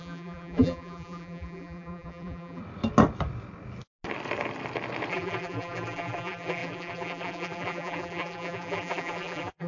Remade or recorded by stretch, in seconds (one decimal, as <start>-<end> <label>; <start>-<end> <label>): 0.0-2.6 remade; 2.6-5.1 recorded; 5.1-9.7 remade